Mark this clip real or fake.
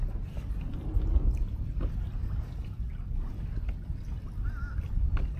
real